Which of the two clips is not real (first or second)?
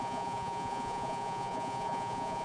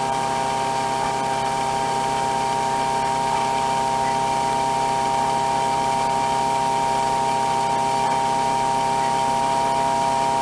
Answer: first